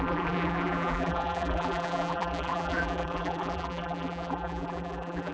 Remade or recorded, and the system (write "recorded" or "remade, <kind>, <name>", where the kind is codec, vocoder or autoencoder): remade, vocoder, BigVGAN v2